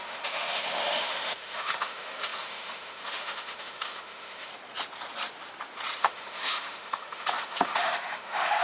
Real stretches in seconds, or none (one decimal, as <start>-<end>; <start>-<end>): 4.5-6.0